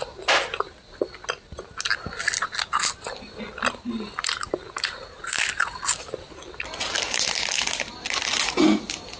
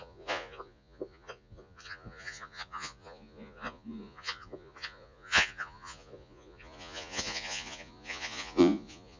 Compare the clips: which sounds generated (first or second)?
second